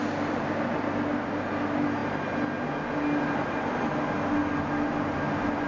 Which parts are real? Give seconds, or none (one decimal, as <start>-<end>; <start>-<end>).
0.0-5.7